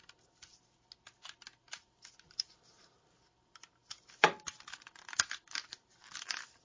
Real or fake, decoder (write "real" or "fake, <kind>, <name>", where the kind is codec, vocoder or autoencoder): real